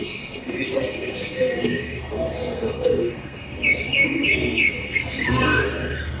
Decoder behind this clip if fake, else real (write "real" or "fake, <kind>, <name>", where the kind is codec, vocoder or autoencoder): fake, codec, SNAC